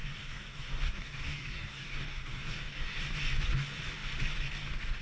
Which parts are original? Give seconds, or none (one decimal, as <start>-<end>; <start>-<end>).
3.0-5.0